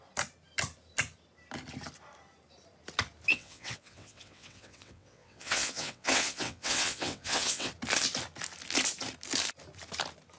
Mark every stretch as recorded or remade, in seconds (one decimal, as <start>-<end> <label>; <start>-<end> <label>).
0.0-3.3 recorded; 3.3-7.7 remade; 7.7-10.4 recorded